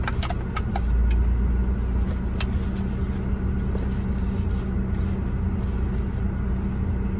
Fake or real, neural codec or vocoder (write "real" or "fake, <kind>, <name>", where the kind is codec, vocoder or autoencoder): real